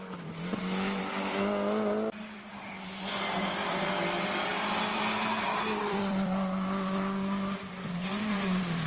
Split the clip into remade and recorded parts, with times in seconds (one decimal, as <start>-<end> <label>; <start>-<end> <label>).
0.0-4.5 remade; 4.5-5.8 recorded; 5.8-8.9 remade